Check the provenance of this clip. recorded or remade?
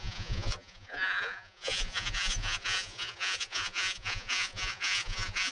remade